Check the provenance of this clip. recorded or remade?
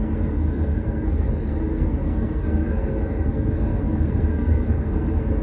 remade